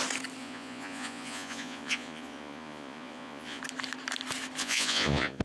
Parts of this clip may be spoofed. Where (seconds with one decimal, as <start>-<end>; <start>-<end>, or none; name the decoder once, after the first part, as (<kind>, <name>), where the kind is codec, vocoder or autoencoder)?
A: 0.4-3.6 (vocoder, Vocos); 4.6-5.4